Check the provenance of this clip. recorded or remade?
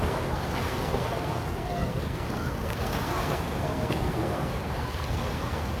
remade